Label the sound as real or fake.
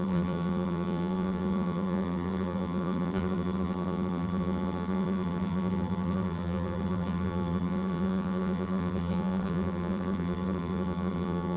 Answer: fake